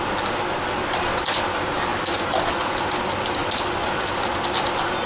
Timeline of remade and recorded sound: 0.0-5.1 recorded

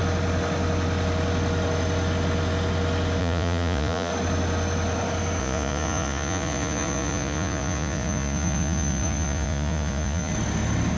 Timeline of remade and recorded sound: 0.0-3.2 recorded; 3.2-4.1 remade; 4.1-5.4 recorded; 5.4-10.3 remade; 10.3-11.0 recorded

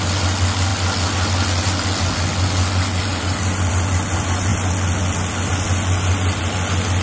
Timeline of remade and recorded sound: 0.0-7.0 recorded

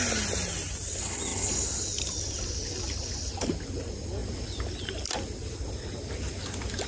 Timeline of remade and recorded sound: 0.0-6.9 recorded